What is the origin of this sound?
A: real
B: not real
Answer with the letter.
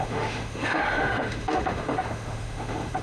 B